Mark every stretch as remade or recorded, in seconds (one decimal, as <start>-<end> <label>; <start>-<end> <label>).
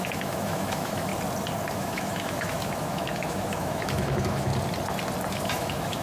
0.0-1.1 remade; 1.1-1.7 recorded; 1.7-4.5 remade; 4.5-5.3 recorded; 5.3-6.0 remade